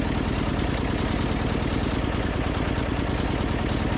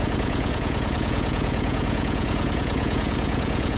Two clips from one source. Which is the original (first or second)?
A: first